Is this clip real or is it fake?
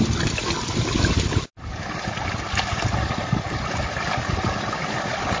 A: real